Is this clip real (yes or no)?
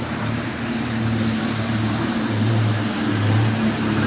no